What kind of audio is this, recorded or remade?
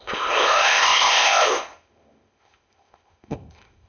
remade